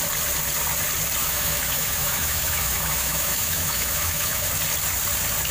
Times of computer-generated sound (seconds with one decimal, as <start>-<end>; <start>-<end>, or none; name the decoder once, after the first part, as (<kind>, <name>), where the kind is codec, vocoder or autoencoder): 1.2-4.5 (autoencoder, DAC-VAE)